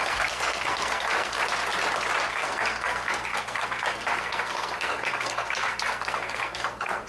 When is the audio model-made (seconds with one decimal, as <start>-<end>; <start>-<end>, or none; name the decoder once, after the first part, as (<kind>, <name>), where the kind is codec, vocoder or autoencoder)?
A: 0.0-1.4 (codec, SNAC); 2.3-7.1